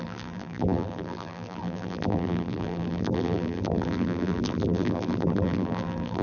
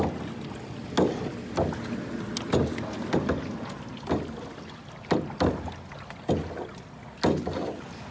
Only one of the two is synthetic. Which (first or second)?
first